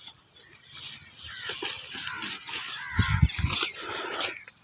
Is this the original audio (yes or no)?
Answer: yes